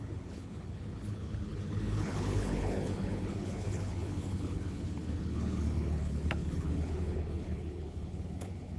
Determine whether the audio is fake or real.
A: fake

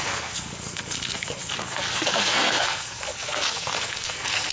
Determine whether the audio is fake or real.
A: fake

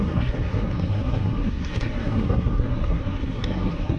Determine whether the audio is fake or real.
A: fake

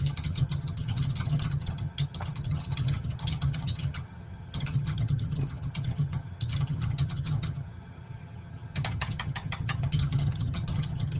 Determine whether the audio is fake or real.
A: fake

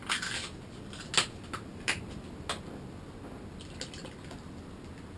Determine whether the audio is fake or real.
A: real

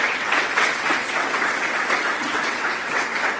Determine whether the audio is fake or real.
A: fake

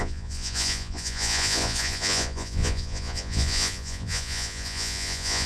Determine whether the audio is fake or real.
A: fake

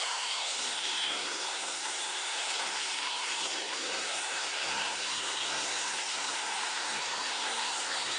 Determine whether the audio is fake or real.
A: fake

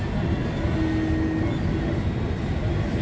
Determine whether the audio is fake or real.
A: real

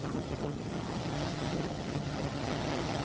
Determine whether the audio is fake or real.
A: fake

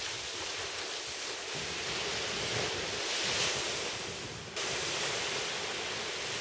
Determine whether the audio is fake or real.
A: real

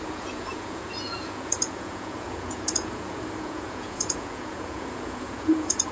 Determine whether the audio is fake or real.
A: fake